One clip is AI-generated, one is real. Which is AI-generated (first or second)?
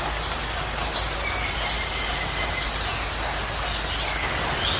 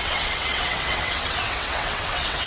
second